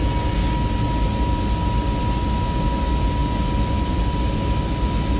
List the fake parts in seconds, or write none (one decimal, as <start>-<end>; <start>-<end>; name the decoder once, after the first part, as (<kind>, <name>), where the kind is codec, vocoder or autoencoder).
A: none